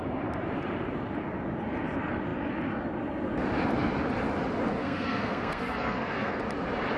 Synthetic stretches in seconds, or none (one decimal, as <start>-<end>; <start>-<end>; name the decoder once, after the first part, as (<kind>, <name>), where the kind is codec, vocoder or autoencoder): 4.8-6.4 (codec, SNAC)